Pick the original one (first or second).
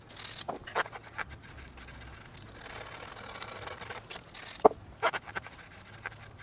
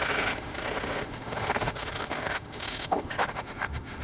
first